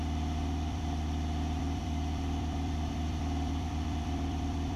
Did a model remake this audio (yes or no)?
yes